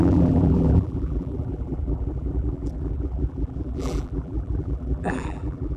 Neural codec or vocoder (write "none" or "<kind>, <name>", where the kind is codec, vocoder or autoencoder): vocoder, BigVGAN v2